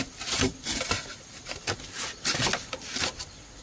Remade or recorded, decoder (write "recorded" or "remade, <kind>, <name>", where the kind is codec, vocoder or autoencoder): recorded